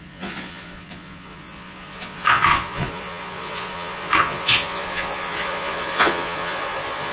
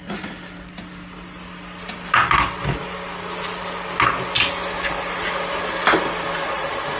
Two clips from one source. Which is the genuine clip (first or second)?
second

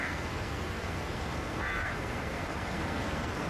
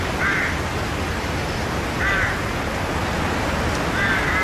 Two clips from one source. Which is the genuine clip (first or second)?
second